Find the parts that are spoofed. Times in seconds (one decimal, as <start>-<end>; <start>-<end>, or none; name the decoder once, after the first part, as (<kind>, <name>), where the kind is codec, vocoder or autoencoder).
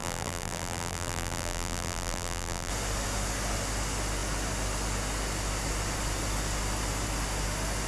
0.0-2.7 (vocoder, BigVGAN v2)